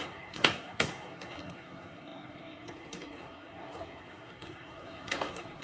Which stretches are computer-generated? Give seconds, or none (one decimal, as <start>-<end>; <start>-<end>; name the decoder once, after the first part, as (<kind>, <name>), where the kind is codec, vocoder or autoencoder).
0.0-5.6 (codec, SNAC)